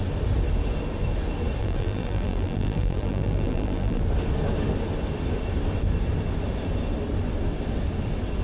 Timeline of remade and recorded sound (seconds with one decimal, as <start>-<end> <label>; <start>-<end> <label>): 0.0-1.6 recorded; 1.6-4.0 remade; 4.0-8.4 recorded